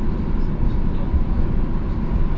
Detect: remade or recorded recorded